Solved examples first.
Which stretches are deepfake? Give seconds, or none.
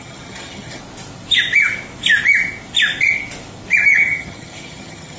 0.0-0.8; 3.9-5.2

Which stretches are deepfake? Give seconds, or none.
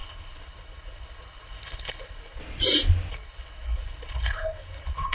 0.0-2.4; 3.1-5.1